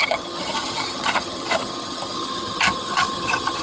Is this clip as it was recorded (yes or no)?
no